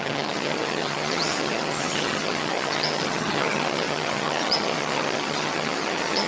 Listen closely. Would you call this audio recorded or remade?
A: remade